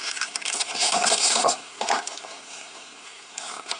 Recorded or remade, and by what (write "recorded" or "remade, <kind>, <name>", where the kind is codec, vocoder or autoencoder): remade, codec, SNAC